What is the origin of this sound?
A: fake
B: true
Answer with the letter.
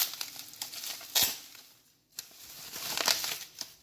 B